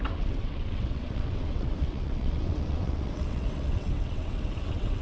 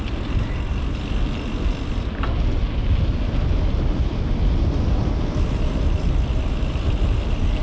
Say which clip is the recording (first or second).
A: second